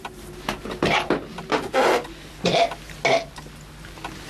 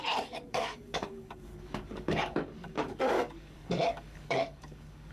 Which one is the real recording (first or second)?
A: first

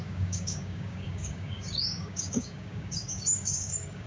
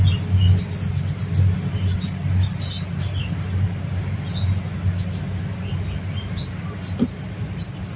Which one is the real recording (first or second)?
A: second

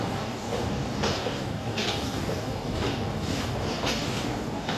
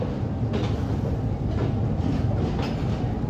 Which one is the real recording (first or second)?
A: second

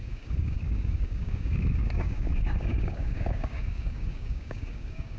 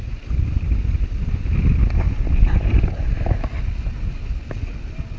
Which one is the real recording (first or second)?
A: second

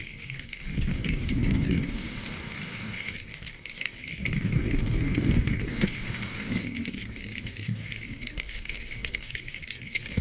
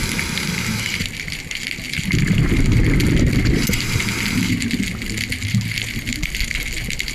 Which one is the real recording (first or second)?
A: second